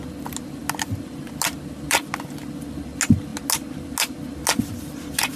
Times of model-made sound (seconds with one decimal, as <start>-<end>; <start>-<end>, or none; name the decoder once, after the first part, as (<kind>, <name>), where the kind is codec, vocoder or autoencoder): none